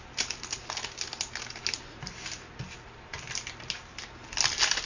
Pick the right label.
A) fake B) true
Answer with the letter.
B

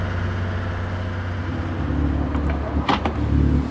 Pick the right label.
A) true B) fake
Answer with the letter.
A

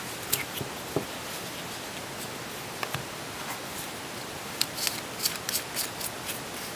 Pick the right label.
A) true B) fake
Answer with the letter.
A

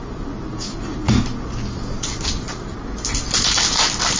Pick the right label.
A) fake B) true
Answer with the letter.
B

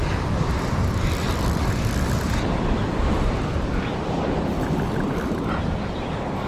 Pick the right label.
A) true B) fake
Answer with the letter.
B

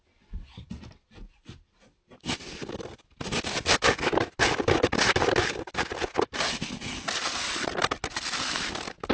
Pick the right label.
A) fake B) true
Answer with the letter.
B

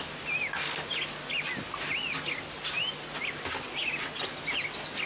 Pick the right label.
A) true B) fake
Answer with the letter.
A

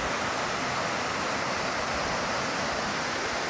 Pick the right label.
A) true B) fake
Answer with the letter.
A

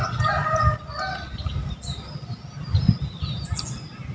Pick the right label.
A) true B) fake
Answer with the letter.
A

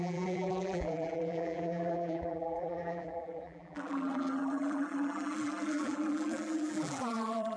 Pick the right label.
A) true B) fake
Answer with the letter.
B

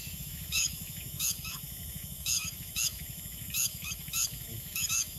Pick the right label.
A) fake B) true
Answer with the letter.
A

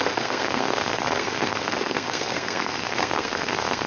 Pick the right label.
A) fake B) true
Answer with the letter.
A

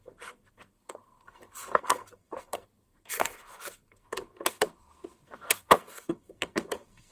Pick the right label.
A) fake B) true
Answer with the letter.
A